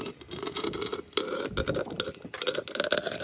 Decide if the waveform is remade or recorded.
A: recorded